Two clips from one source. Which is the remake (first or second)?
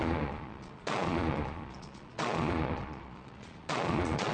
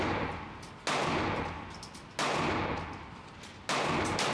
first